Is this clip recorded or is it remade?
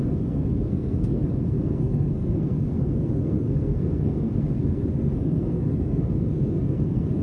remade